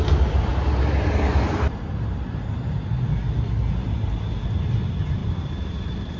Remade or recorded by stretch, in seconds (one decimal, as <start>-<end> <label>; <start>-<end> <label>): 0.0-5.2 recorded; 5.2-6.2 remade